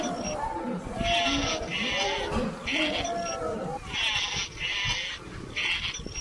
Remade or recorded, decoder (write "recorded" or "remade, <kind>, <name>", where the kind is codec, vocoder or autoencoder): recorded